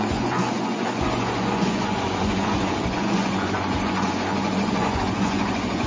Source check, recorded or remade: remade